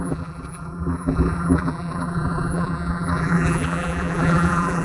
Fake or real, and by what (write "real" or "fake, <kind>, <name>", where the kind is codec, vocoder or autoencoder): fake, vocoder, BigVGAN v2